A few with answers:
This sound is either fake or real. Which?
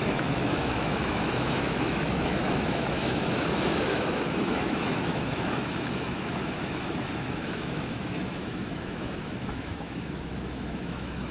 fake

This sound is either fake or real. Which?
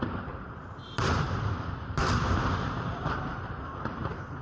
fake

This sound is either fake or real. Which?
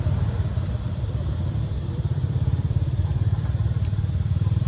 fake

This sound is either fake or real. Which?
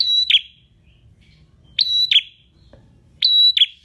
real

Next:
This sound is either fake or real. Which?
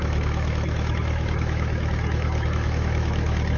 fake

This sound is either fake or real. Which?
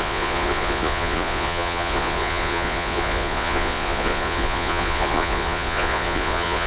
fake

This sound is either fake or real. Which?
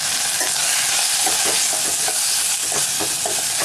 real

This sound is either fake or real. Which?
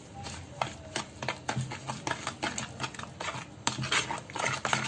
real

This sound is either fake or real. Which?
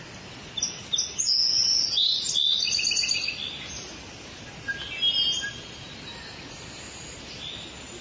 real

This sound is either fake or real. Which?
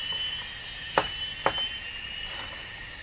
real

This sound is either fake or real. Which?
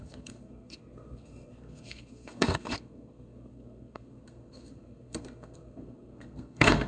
fake